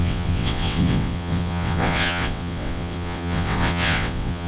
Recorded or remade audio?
remade